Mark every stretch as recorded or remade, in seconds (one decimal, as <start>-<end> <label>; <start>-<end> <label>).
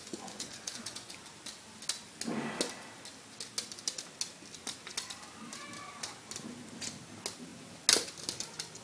0.0-1.1 remade; 1.1-8.8 recorded